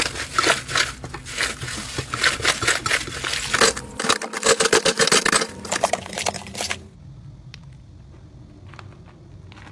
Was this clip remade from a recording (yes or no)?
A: no